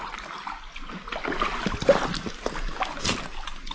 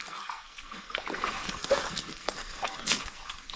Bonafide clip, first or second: first